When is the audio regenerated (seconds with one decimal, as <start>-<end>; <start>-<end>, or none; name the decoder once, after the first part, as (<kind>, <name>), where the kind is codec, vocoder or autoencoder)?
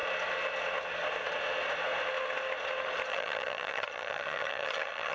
3.1-5.1 (vocoder, HiFi-GAN)